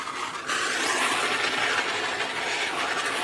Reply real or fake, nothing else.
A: real